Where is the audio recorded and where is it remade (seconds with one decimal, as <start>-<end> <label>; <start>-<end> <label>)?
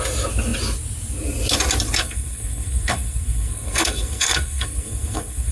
0.0-2.0 recorded; 2.0-5.5 remade